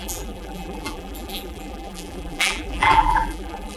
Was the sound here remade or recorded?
remade